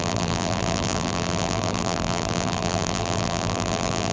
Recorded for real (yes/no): no